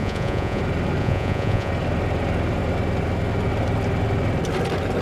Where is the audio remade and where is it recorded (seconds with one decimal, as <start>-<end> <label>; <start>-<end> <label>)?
0.0-0.6 remade; 0.6-1.0 recorded; 1.0-1.7 remade; 1.7-5.0 recorded